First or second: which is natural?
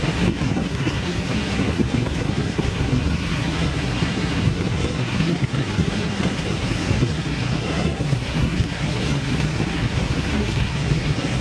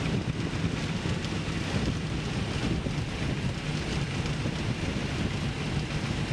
second